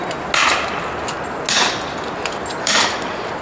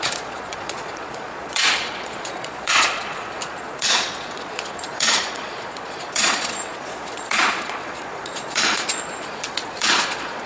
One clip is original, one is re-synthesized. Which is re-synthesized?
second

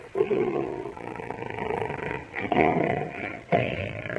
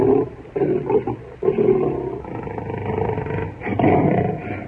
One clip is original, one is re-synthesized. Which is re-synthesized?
first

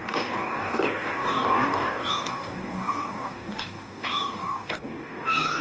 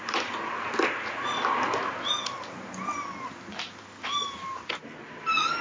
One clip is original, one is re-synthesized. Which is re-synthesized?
first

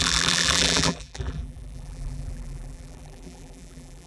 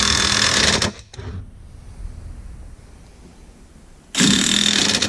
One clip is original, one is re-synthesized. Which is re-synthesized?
first